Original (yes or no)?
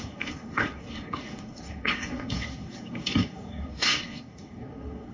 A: no